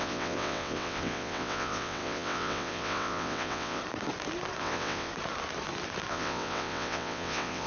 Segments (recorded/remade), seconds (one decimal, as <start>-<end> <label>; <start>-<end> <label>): 0.0-3.8 remade; 3.8-4.6 recorded; 4.6-5.1 remade; 5.1-6.1 recorded; 6.1-7.7 remade